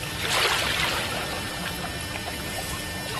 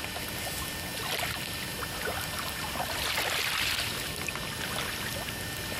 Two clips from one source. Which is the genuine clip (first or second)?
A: first